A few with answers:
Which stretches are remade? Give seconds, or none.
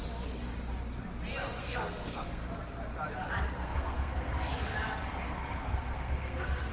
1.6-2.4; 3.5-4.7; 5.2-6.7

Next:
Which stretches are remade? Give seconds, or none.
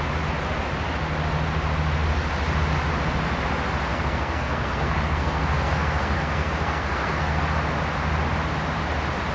3.9-7.4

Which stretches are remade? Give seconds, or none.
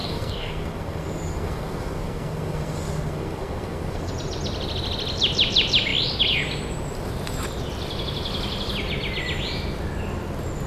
0.0-4.1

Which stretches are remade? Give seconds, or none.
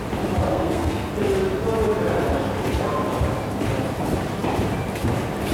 0.5-1.1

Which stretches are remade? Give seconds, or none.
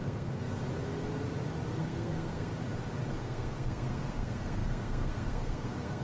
0.0-0.6; 1.8-2.5; 3.2-6.0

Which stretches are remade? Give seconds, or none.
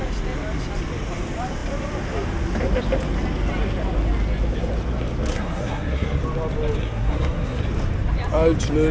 5.3-6.2; 6.8-7.6